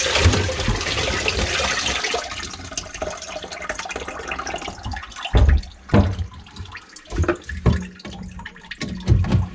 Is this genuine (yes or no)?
yes